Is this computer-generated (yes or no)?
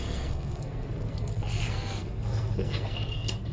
yes